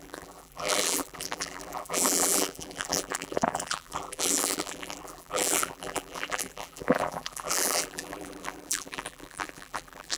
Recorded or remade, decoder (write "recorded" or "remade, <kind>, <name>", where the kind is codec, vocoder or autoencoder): remade, vocoder, BigVGAN v2